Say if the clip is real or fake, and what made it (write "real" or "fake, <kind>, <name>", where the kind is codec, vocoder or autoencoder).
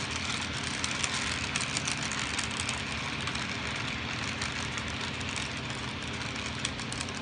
real